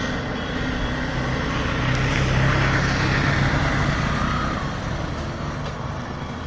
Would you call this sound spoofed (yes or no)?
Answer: no